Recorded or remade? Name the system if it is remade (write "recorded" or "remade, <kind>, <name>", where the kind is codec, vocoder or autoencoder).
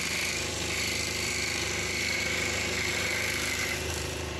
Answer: remade, vocoder, BigVGAN v2